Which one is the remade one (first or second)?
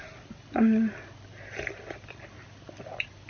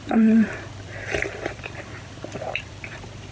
second